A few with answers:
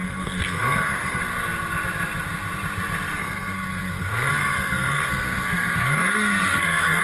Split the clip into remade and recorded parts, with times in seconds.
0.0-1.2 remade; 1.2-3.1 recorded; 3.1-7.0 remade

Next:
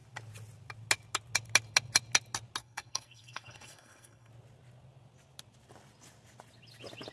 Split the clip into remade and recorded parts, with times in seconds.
0.0-2.6 recorded; 2.6-4.3 remade; 4.3-7.1 recorded

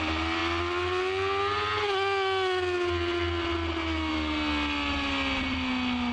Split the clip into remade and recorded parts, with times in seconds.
0.0-6.1 recorded

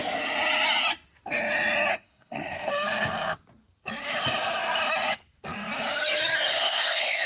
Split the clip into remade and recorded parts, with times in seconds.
0.0-1.9 recorded; 1.9-2.7 remade; 2.7-6.5 recorded; 6.5-7.3 remade